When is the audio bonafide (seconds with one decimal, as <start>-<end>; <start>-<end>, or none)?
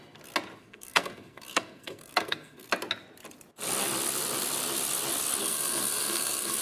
0.0-0.6; 2.7-5.4